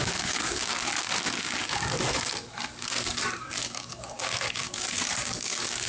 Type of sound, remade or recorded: remade